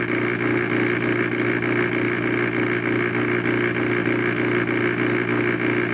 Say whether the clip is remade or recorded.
recorded